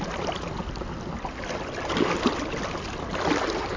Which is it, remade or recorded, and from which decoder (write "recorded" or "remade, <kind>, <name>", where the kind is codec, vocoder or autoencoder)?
recorded